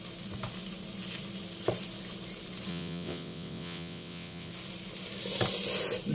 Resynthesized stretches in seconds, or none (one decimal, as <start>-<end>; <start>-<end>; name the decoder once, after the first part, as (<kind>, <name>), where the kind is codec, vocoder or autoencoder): 2.7-4.5 (vocoder, WaveNeXt)